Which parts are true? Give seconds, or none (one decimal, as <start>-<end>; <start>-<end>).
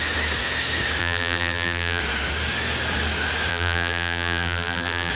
0.0-1.0; 2.0-3.5